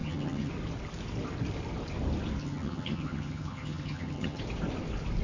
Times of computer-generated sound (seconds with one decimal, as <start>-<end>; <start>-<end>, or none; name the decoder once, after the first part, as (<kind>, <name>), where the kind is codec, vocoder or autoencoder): 0.0-0.5 (vocoder, HiFi-GAN); 2.4-4.4